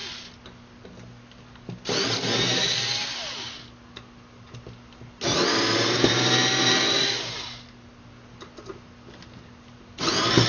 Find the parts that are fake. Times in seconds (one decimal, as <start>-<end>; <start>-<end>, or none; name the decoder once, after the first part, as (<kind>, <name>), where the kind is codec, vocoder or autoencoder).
none